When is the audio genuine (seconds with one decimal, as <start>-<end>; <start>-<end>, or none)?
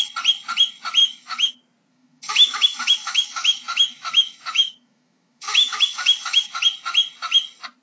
0.0-1.0; 1.5-1.9; 6.6-7.8